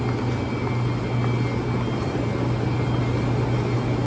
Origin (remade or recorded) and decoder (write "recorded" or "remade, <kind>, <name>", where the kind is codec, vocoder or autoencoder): recorded